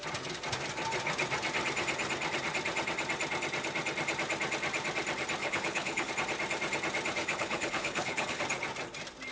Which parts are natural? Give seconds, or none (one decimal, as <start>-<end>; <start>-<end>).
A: 0.0-5.4; 6.1-7.2; 8.4-9.3